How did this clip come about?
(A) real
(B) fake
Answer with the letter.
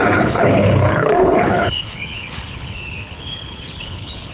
B